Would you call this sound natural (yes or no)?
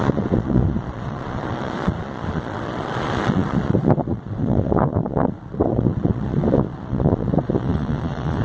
no